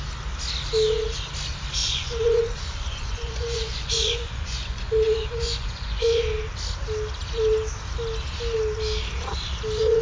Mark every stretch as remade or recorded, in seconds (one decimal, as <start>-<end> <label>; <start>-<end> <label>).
0.0-1.8 recorded; 1.8-6.2 remade; 6.2-10.0 recorded